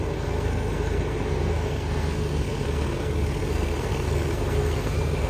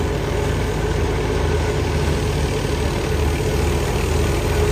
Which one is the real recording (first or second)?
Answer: second